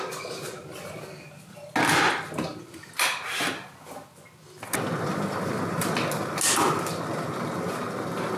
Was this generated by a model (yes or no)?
no